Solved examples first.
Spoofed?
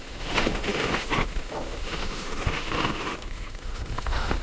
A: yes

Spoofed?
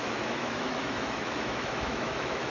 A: yes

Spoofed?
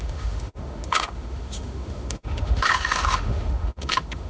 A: yes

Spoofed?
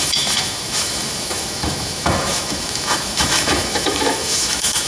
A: yes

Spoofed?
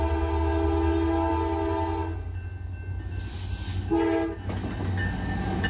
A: no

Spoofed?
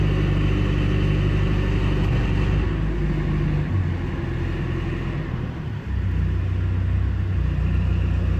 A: no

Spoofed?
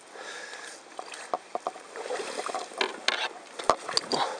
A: no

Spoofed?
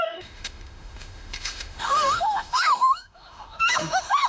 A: yes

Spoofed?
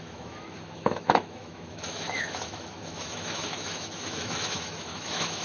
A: yes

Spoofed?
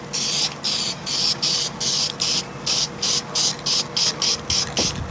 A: no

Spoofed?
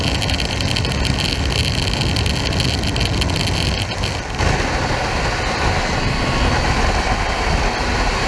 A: no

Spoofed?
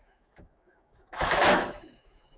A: yes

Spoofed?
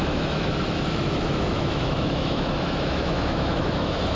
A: yes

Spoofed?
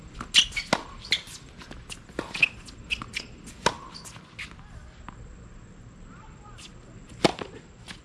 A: no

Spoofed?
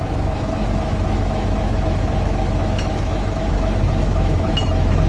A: yes